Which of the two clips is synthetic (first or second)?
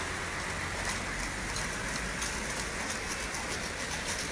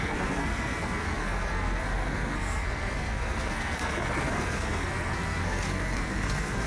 second